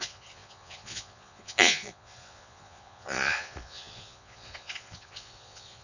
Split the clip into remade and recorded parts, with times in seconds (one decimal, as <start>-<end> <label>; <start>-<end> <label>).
0.0-5.8 remade